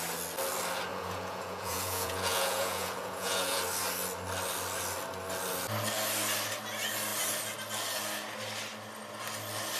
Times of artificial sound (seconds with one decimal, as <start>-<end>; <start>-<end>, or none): 0.9-3.6